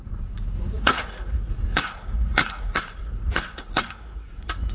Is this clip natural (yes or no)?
no